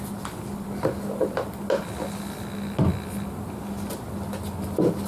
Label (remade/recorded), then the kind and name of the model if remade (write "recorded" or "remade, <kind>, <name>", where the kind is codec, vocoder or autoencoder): recorded